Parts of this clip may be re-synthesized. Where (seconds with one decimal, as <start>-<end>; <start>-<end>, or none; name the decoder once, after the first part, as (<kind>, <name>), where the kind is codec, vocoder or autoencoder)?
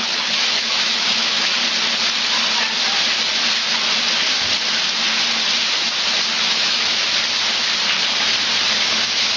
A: 0.0-1.5 (autoencoder, DAC-VAE); 6.3-7.0; 8.8-9.4